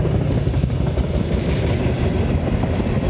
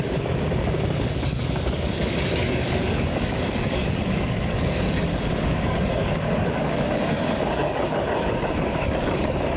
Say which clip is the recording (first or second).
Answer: first